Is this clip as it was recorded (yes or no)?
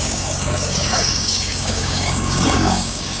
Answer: no